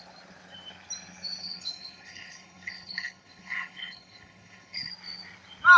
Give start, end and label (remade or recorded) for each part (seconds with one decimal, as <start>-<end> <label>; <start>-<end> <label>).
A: 0.0-1.4 recorded; 1.4-4.9 remade; 4.9-5.8 recorded

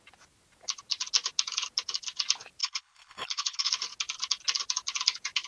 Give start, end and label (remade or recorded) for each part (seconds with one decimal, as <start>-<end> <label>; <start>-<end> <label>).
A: 0.0-2.6 recorded; 2.6-3.7 remade; 3.7-5.5 recorded

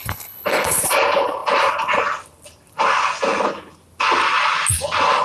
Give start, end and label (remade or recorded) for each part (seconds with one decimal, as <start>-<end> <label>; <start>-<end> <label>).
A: 0.0-0.8 remade; 0.8-5.2 recorded

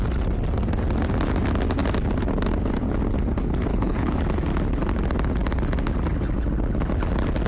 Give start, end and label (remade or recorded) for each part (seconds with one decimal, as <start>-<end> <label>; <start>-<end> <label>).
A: 0.0-3.7 recorded; 3.7-4.2 remade; 4.2-7.5 recorded